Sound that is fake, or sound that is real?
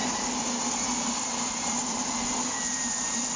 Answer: real